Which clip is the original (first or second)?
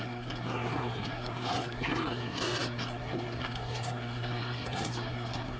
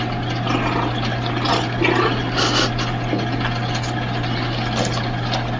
second